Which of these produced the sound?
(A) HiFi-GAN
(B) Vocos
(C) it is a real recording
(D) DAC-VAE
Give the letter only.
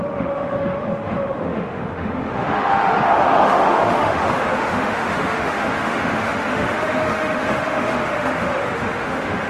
D